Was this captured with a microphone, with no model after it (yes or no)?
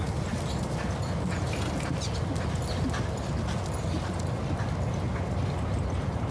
yes